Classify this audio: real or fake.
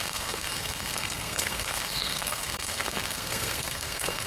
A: fake